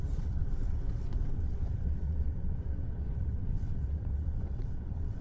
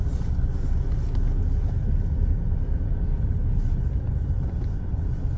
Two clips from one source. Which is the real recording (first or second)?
second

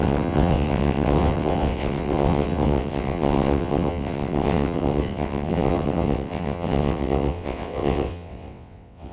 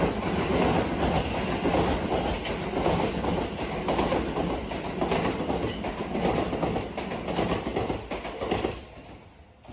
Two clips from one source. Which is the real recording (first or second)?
second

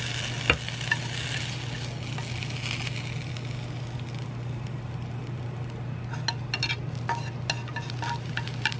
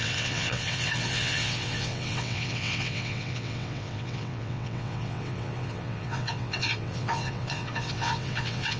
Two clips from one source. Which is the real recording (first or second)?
first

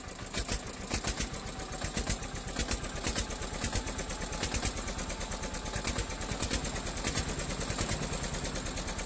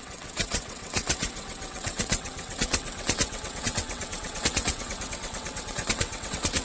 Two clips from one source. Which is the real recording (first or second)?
first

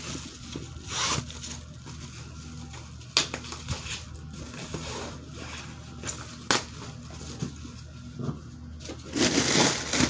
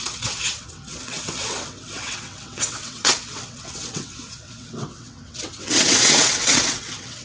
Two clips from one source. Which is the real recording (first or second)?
first